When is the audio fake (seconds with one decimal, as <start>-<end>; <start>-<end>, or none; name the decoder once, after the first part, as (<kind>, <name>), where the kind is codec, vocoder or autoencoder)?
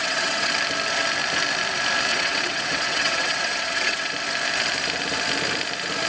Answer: 0.0-0.5 (vocoder, WaveNeXt); 2.1-4.1